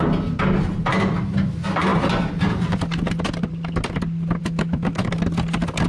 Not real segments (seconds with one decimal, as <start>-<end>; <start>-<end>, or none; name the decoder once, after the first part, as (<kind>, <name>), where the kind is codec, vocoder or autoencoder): 4.4-5.1 (autoencoder, DAC-VAE)

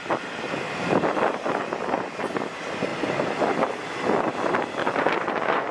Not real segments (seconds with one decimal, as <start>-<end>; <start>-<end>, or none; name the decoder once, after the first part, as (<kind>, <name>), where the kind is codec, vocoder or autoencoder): 4.8-5.7 (vocoder, Vocos)